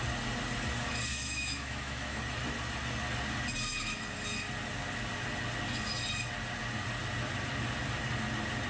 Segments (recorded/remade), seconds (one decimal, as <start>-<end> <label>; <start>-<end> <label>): 0.0-1.1 recorded; 1.1-2.2 remade; 2.2-8.7 recorded